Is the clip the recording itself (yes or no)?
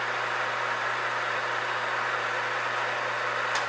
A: yes